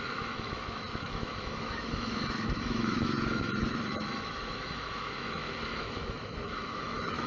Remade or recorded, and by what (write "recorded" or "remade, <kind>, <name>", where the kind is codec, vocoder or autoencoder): remade, autoencoder, DAC-VAE